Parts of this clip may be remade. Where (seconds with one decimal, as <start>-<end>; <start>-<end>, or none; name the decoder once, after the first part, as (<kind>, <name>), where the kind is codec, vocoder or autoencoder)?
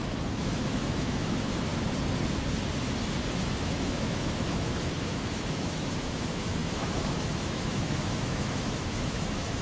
0.0-1.7 (autoencoder, DAC-VAE); 3.4-9.6